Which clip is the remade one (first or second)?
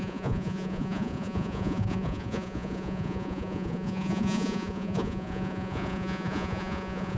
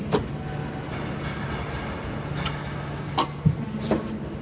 first